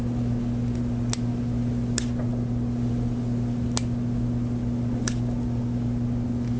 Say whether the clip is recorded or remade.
recorded